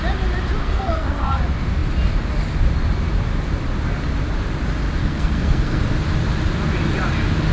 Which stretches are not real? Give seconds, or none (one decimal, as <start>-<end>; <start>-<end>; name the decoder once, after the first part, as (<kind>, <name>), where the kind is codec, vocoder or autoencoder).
0.6-1.4 (codec, SNAC); 5.0-5.8